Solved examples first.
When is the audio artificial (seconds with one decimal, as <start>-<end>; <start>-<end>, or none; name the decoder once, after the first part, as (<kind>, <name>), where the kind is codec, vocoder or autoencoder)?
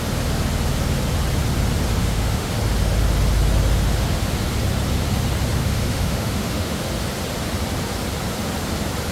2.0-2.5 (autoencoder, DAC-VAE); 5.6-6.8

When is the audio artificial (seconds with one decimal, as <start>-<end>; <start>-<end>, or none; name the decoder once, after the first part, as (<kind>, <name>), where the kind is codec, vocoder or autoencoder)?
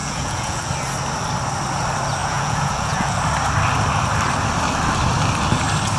0.0-0.7 (vocoder, Vocos); 2.2-3.2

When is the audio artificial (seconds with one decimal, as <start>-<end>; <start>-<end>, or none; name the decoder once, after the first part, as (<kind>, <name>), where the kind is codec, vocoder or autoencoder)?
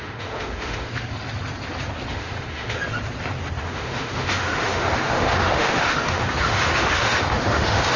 0.0-0.9 (autoencoder, DAC-VAE); 2.1-2.8; 3.6-8.0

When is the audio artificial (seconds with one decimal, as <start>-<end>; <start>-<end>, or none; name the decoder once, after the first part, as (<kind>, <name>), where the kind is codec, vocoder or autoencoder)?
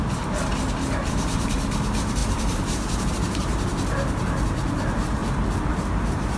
0.0-3.5 (vocoder, BigVGAN v2); 4.4-5.2; 5.7-6.4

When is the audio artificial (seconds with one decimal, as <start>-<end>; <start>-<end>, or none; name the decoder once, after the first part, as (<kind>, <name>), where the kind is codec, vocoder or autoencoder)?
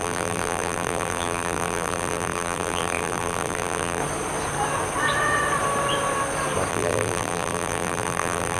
0.0-4.0 (vocoder, BigVGAN v2); 6.7-8.6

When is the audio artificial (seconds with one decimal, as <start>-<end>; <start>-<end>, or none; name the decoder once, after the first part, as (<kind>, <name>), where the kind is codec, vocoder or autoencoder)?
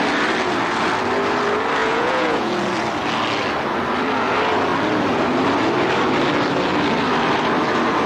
1.8-2.5 (vocoder, Vocos)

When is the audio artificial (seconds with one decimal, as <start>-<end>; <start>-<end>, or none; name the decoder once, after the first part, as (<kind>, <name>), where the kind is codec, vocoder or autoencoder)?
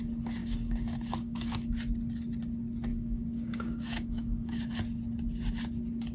0.4-1.7 (codec, DAC); 2.9-4.8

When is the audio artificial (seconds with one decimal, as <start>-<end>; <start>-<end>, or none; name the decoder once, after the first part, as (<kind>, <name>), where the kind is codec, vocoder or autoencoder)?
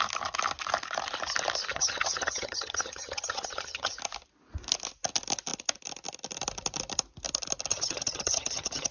1.7-3.9 (vocoder, HiFi-GAN); 7.7-8.9